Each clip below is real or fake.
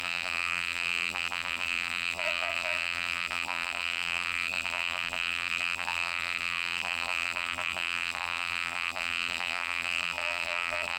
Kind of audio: fake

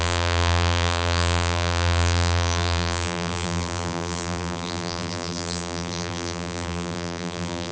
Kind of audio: fake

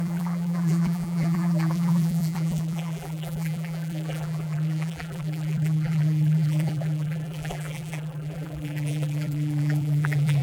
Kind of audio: fake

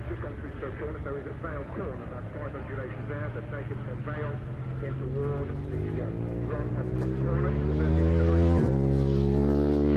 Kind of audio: real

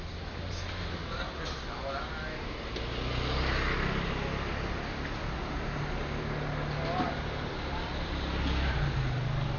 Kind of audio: real